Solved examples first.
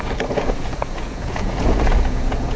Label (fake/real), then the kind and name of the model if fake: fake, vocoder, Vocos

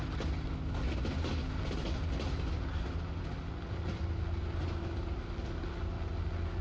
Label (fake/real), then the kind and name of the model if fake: real